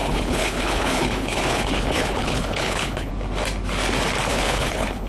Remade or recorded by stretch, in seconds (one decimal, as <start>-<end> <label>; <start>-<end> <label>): 0.0-3.1 remade; 3.1-4.3 recorded; 4.3-5.1 remade